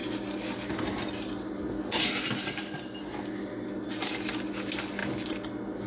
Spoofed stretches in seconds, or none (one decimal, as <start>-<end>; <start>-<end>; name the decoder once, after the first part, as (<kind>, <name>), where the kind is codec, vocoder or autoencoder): none